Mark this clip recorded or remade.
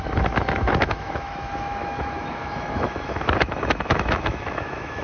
remade